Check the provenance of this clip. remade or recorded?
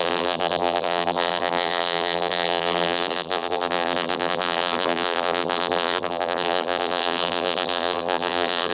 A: remade